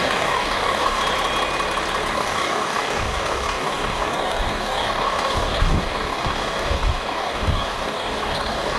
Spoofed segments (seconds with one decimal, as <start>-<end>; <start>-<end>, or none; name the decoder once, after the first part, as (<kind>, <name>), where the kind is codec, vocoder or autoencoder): 0.0-1.0 (codec, DAC); 2.1-8.8